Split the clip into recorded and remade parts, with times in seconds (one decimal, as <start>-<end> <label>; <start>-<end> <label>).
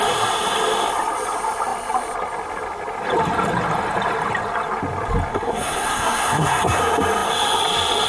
0.0-5.3 recorded; 5.3-6.8 remade; 6.8-8.1 recorded